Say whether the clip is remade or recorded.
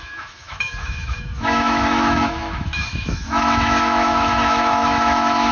remade